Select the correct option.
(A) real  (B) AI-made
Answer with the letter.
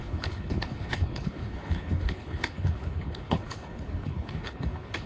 B